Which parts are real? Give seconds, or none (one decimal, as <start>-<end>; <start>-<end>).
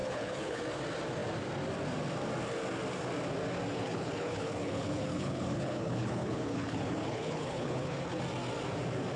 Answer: 0.6-3.7; 8.2-9.2